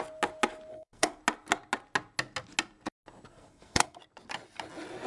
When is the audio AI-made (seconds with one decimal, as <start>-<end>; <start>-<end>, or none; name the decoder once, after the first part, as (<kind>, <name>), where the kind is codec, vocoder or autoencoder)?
0.7-1.2 (codec, SNAC); 3.3-4.0